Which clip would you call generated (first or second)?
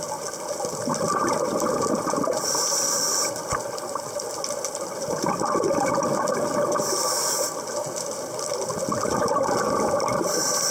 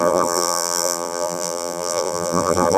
second